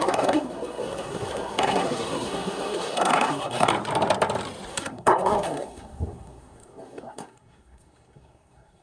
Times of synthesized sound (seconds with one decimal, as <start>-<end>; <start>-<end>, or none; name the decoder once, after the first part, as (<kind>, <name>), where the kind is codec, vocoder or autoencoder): 0.0-3.7 (codec, SNAC); 4.7-8.8

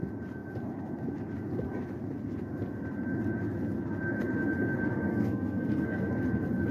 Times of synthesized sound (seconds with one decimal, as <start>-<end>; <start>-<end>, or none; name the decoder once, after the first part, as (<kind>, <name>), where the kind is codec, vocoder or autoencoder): 5.1-6.1 (codec, SNAC)

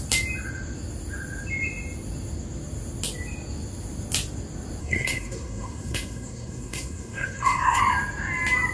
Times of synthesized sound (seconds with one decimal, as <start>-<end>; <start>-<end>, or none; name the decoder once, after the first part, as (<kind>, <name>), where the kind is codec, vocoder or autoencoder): 4.8-7.8 (codec, SNAC)

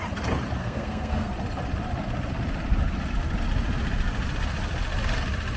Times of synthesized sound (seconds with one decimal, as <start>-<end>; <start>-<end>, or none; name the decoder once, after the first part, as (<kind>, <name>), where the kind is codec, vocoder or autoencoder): 0.6-1.3 (codec, SNAC)

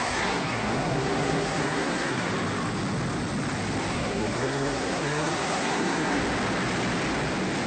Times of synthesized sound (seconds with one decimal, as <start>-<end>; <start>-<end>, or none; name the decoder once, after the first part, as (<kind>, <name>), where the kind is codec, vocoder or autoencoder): 0.0-2.3 (codec, SNAC); 3.9-6.2